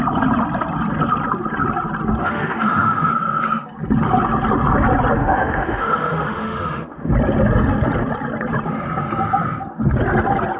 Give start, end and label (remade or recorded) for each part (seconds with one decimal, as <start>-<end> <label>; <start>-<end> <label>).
0.0-2.2 recorded; 2.2-3.1 remade; 3.1-5.2 recorded; 5.2-7.1 remade; 7.1-10.6 recorded